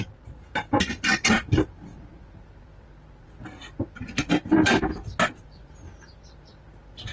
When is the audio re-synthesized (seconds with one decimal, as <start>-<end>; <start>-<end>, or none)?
none